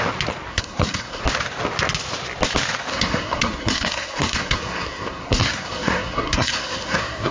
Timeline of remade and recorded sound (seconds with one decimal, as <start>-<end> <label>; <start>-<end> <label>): 0.0-0.5 recorded; 0.5-1.2 remade; 1.2-2.9 recorded; 2.9-7.3 remade